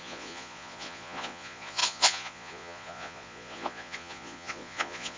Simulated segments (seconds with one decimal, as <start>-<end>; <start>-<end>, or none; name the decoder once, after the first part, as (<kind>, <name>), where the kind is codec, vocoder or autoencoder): 0.0-5.2 (vocoder, Vocos)

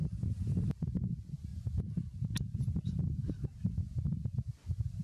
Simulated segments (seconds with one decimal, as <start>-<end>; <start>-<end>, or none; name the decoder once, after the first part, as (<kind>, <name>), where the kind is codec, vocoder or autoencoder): none

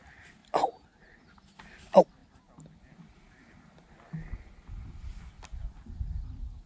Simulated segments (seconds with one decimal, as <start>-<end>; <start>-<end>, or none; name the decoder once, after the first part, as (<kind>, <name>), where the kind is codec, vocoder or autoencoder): 0.4-1.0 (vocoder, BigVGAN v2)